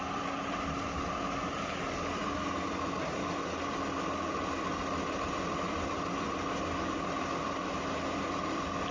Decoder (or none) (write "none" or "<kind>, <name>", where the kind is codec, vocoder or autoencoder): none